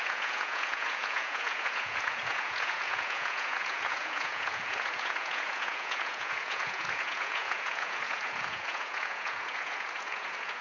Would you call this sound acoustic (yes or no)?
no